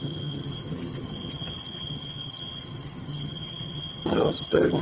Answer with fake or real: fake